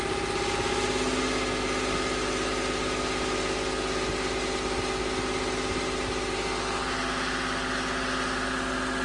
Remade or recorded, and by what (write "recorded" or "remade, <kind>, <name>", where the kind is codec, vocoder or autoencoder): recorded